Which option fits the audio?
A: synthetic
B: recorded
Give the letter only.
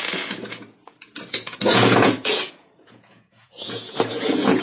A